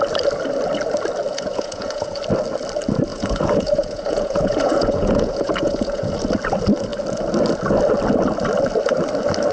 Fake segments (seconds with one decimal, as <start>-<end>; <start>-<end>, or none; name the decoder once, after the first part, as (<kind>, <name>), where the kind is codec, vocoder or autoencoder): 1.3-2.2 (vocoder, Vocos); 3.1-6.3